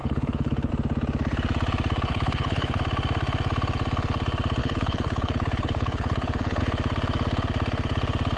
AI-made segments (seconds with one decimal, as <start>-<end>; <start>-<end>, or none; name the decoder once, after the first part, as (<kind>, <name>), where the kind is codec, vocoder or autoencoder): 0.0-0.7 (codec, HILCodec); 2.1-2.8; 4.6-6.6